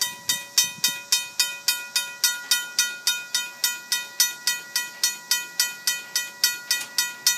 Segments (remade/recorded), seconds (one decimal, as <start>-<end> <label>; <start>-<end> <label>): 0.0-7.4 recorded